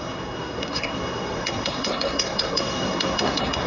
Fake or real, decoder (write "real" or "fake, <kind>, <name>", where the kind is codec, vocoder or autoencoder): fake, codec, SNAC